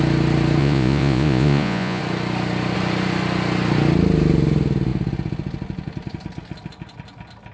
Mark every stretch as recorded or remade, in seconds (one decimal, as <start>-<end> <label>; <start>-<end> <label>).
0.0-0.6 recorded; 0.6-2.0 remade; 2.0-7.5 recorded